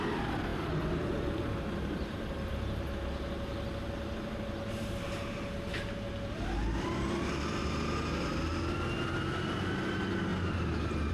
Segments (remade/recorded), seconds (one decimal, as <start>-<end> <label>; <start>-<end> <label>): 0.0-0.5 recorded; 0.5-2.5 remade; 2.5-11.1 recorded